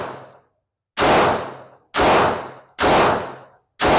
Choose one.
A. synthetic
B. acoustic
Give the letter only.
B